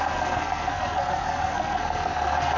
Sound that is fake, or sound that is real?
fake